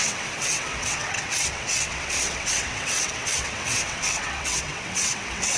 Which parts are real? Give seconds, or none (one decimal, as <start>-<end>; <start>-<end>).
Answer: none